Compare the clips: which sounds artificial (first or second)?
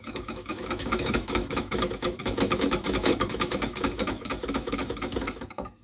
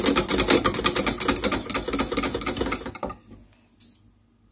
first